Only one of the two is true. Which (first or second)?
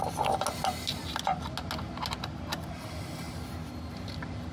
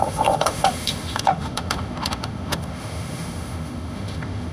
first